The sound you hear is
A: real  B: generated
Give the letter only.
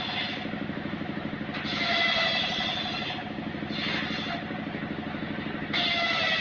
A